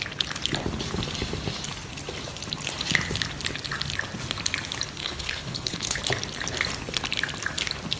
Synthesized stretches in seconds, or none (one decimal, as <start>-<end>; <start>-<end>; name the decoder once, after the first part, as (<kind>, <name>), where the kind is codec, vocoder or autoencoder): 5.0-6.0 (codec, HILCodec)